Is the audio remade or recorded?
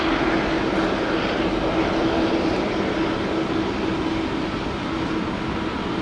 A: recorded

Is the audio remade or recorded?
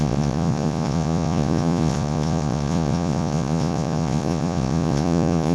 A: remade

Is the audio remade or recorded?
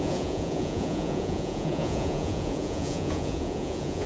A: remade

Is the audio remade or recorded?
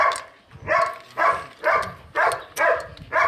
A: recorded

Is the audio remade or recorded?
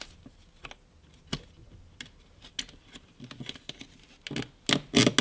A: recorded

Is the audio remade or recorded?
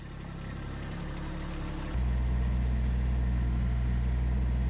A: recorded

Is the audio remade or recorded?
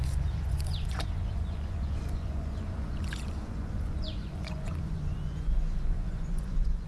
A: remade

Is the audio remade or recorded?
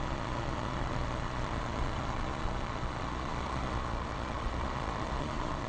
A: remade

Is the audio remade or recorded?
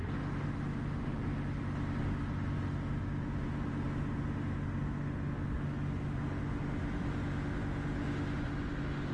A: recorded